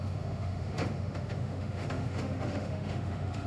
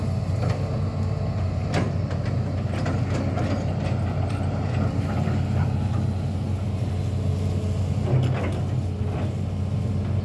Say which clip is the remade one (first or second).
first